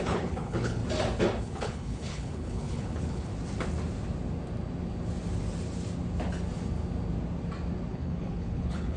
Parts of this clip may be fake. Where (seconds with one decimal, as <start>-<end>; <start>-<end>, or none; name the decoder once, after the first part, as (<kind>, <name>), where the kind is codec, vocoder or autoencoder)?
0.0-0.8 (codec, HILCodec); 1.4-3.3; 7.9-9.0